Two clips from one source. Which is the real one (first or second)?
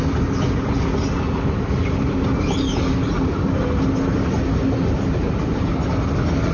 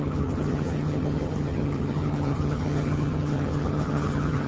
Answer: first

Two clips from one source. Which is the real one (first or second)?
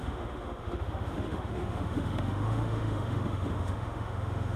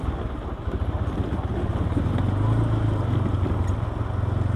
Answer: second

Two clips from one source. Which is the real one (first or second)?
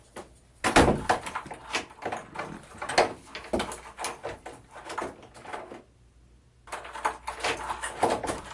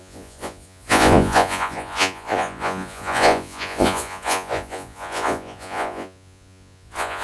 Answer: first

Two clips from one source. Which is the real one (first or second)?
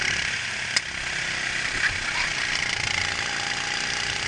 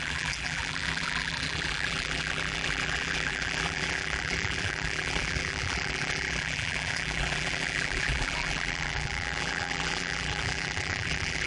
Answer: first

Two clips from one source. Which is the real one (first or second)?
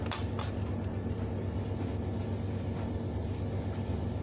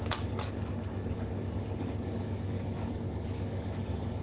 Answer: first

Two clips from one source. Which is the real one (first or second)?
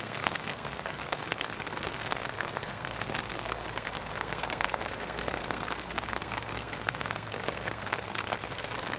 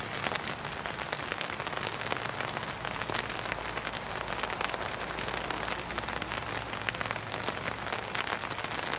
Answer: second